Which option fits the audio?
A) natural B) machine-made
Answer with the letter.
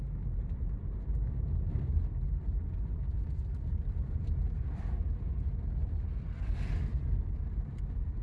A